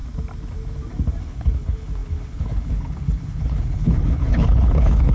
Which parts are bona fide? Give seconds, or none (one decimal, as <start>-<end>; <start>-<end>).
0.0-1.2

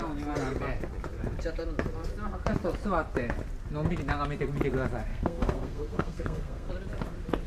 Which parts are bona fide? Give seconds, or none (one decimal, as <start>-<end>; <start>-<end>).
0.0-5.1; 6.7-7.5

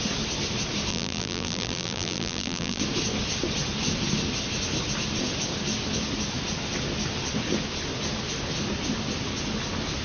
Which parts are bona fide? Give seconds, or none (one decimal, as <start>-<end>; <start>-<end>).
0.0-0.9; 2.8-10.0